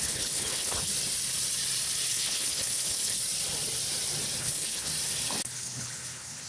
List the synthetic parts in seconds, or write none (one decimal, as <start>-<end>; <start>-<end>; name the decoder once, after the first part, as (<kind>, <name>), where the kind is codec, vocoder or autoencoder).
0.0-0.9 (codec, HILCodec); 2.1-3.2; 4.4-4.9; 5.4-6.5